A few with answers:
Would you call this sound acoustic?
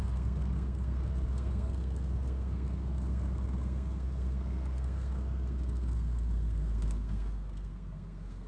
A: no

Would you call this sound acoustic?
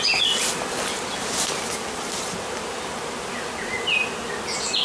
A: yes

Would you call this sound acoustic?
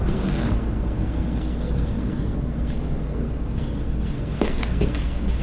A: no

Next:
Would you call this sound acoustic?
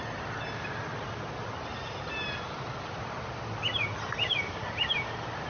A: yes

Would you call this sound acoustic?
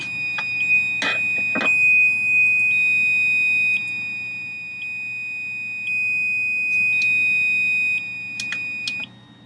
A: yes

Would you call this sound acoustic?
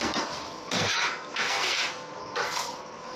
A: no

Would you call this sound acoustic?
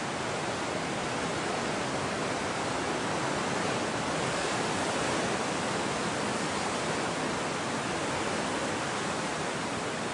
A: yes